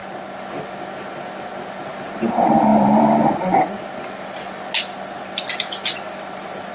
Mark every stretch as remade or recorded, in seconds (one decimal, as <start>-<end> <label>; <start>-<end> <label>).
0.0-6.7 recorded